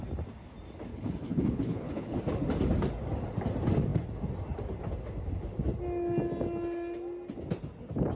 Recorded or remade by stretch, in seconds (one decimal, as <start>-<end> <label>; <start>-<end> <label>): 0.0-0.9 recorded; 0.9-2.2 remade; 2.2-8.2 recorded